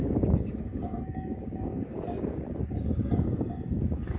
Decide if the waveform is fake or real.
fake